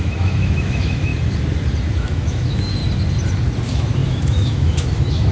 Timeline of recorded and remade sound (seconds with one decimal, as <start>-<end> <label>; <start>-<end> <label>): 0.0-1.1 remade; 1.1-2.0 recorded; 2.0-2.8 remade; 2.8-3.6 recorded; 3.6-5.3 remade